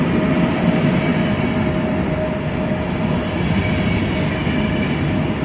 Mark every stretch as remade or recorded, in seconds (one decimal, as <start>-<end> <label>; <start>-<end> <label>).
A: 0.0-5.4 recorded